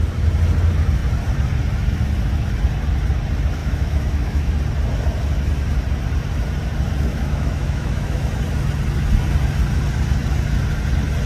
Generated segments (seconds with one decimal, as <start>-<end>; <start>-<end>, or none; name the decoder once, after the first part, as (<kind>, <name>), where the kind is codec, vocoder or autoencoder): 3.6-4.5 (autoencoder, DAC-VAE); 7.1-8.3